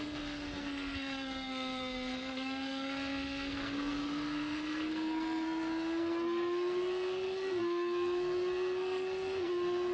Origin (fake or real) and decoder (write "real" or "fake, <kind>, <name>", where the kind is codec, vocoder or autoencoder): fake, codec, SNAC